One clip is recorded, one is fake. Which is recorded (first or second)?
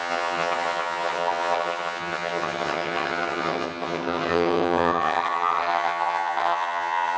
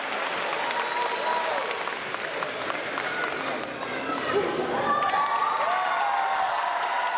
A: second